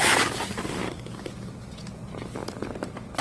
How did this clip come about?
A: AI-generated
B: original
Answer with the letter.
B